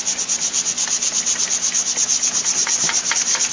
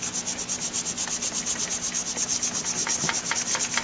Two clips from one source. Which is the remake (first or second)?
first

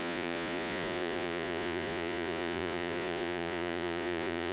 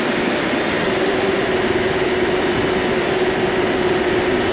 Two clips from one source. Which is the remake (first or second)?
first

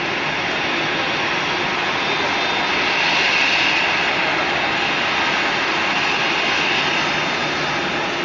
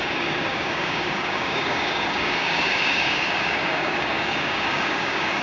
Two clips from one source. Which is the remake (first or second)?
second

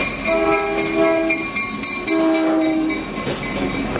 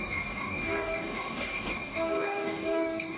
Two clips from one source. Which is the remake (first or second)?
second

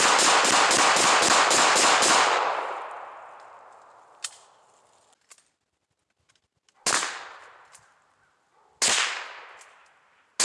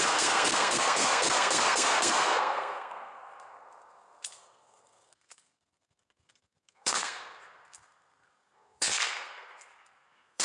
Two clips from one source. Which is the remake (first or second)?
second